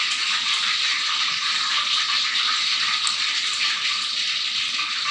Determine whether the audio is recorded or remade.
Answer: recorded